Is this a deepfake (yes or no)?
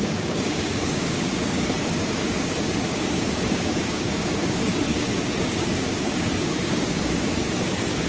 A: yes